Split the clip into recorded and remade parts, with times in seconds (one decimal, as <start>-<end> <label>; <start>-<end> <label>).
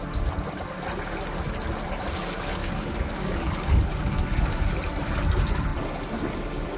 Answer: 0.0-2.6 recorded; 2.6-4.6 remade; 4.6-6.8 recorded